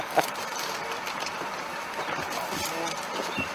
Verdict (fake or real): fake